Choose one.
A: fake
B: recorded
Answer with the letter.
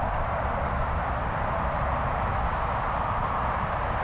B